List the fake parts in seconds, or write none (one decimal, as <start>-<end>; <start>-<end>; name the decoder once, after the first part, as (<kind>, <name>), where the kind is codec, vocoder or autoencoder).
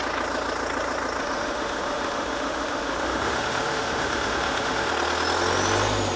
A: 1.2-4.9 (autoencoder, DAC-VAE)